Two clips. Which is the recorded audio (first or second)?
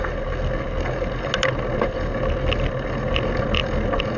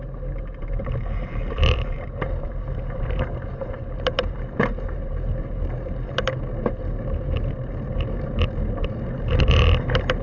first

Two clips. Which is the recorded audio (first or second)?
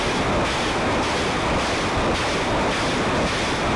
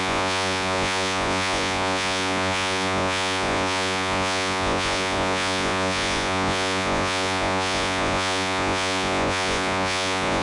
first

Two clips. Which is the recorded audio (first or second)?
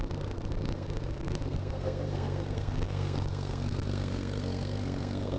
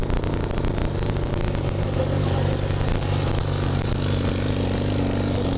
second